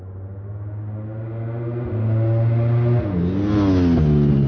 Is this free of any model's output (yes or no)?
yes